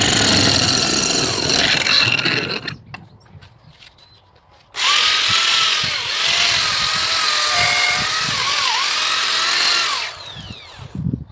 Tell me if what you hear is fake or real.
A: real